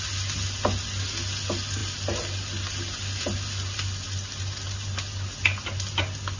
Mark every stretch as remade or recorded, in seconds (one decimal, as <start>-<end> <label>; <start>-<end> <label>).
0.0-6.4 recorded